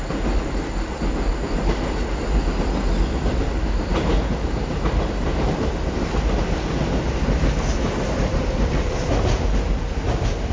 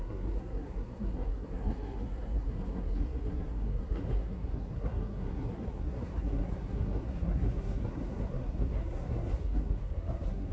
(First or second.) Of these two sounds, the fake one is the second